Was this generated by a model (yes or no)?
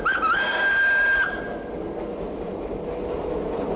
no